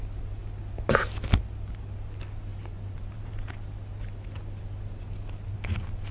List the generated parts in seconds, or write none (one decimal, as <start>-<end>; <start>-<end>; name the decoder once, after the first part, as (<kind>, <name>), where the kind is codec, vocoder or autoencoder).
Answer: 2.5-3.3 (vocoder, BigVGAN v2)